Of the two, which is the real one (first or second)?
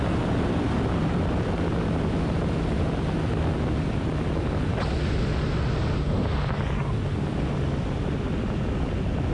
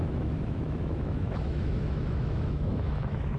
first